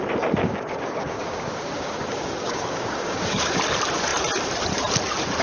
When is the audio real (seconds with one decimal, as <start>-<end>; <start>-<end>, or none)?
0.0-0.4; 3.6-5.4